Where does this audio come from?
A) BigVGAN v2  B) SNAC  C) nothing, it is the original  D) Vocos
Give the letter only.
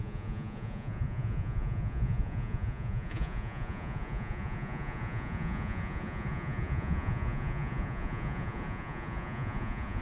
D